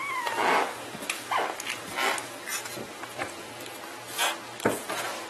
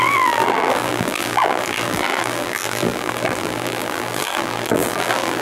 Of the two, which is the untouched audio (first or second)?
first